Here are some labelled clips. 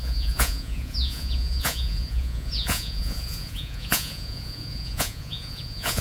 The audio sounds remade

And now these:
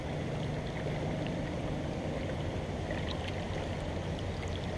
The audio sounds recorded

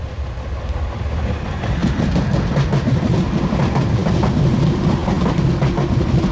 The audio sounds recorded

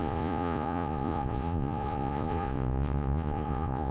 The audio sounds remade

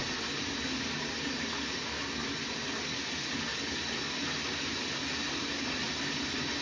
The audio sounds recorded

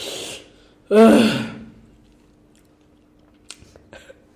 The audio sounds recorded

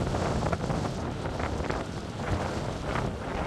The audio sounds recorded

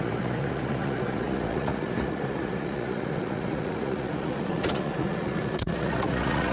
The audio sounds remade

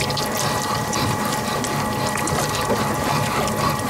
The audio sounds recorded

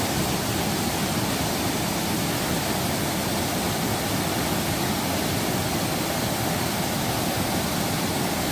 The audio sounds recorded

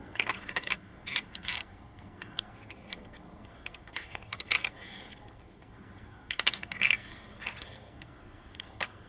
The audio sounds remade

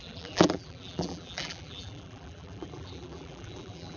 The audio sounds remade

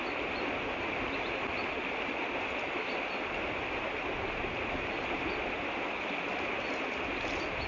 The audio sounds recorded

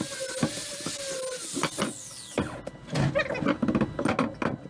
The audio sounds recorded